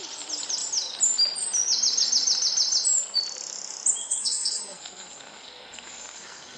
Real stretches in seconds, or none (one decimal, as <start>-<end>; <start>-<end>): 0.0-4.0